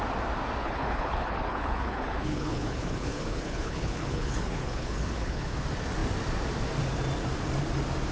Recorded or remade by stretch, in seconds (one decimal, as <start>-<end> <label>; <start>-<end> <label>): 0.0-0.6 recorded; 0.6-5.5 remade; 5.5-8.1 recorded